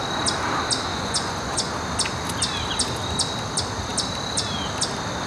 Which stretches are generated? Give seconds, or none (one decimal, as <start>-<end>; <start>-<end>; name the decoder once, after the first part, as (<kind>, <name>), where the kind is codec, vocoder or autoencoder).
0.9-1.7 (vocoder, Vocos)